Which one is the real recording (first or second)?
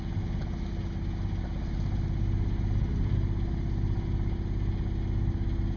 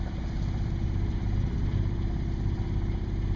first